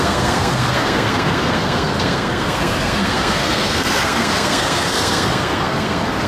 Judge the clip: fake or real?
fake